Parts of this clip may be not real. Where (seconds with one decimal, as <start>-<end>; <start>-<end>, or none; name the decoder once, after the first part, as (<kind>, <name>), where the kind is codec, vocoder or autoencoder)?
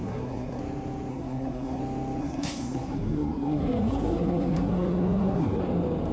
0.0-0.6 (codec, SNAC); 1.1-1.8; 2.2-5.6